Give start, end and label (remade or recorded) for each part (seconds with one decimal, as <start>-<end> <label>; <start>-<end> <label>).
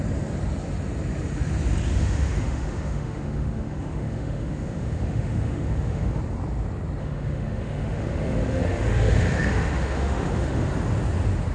0.0-1.9 recorded; 1.9-6.2 remade; 6.2-7.0 recorded; 7.0-10.7 remade; 10.7-11.5 recorded